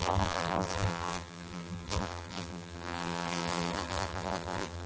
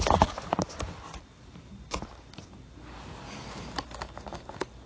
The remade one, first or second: first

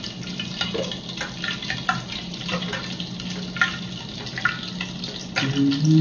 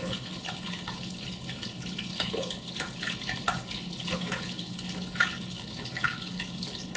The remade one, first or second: second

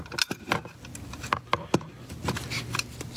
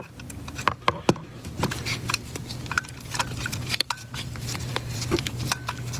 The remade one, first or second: second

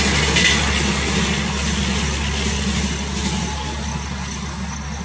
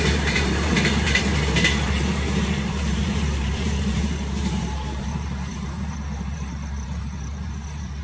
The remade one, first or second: second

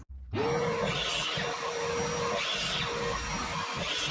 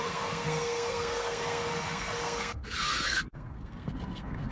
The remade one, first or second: second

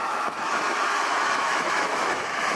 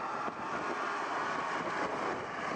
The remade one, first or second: first